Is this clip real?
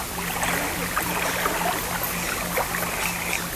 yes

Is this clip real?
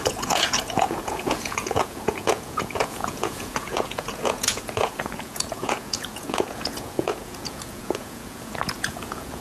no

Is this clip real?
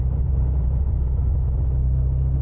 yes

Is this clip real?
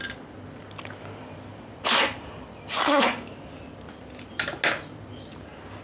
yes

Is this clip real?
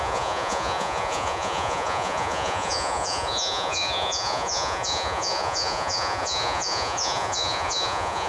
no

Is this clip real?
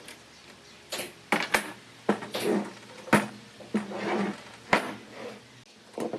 yes